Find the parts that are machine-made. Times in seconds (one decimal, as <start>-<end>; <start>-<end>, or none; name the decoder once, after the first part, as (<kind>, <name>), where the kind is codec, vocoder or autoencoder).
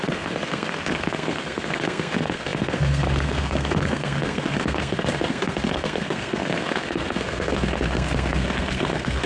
0.0-9.3 (codec, SNAC)